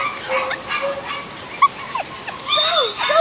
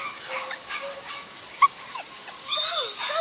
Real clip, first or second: first